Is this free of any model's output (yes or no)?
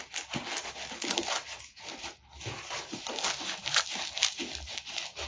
yes